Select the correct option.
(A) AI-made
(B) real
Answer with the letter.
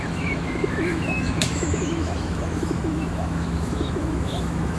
A